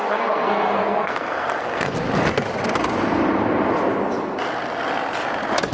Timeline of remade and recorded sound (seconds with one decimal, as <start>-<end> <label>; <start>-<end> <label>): 0.0-1.9 remade; 1.9-5.7 recorded

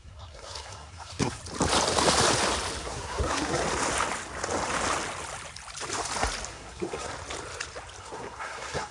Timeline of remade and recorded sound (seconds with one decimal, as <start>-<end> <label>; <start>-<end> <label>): 0.0-1.4 remade; 1.4-2.8 recorded; 2.8-3.6 remade; 3.6-6.5 recorded; 6.5-7.1 remade; 7.1-8.0 recorded; 8.0-8.9 remade

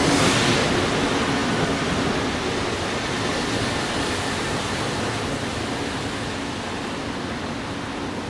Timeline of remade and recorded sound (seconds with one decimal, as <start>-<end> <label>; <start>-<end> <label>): 0.0-8.3 recorded

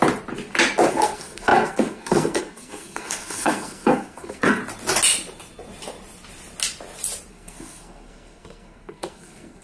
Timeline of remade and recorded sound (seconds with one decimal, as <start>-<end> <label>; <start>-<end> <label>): 0.0-0.9 recorded; 0.9-4.6 remade; 4.6-7.3 recorded; 7.3-9.6 remade

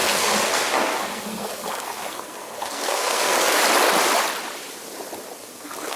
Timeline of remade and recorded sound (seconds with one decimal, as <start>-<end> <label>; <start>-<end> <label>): 0.0-3.6 remade; 3.6-5.4 recorded; 5.4-6.0 remade

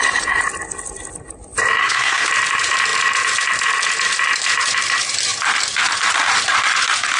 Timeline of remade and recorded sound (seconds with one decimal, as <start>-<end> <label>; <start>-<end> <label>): 0.0-1.8 recorded; 1.8-2.3 remade; 2.3-7.2 recorded